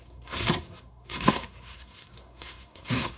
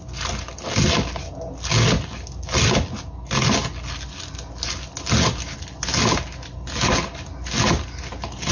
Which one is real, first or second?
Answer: second